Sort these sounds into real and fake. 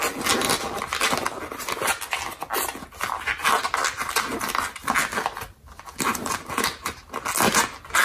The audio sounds real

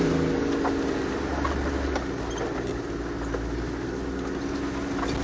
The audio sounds real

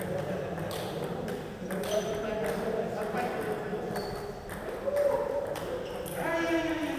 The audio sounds real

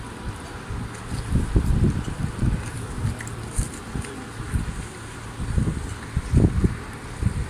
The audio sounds real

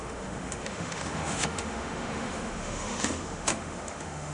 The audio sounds fake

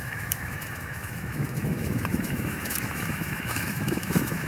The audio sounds fake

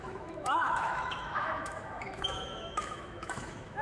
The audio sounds fake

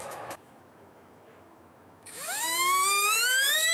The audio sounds fake